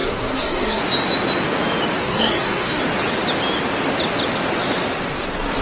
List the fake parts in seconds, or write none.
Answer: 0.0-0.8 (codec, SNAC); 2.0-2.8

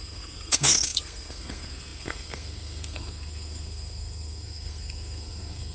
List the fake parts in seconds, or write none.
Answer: 0.0-5.7 (codec, SNAC)